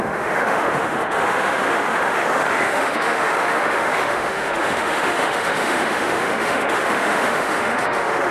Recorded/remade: remade